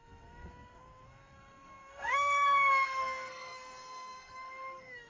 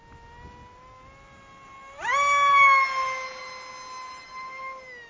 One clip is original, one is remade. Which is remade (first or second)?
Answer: first